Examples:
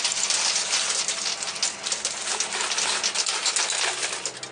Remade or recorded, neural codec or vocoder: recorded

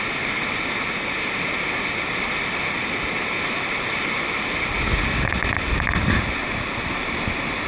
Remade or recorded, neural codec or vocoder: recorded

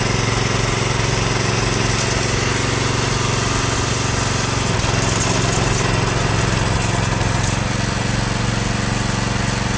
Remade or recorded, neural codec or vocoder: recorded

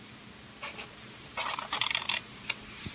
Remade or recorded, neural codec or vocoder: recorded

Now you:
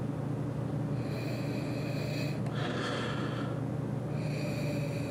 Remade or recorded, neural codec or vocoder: recorded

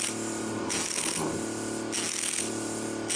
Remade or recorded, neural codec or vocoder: recorded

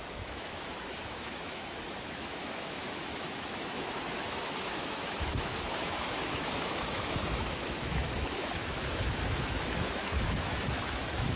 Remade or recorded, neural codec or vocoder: remade, autoencoder, DAC-VAE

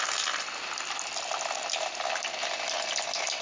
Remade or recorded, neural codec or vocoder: recorded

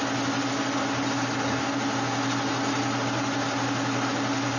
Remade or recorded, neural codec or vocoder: recorded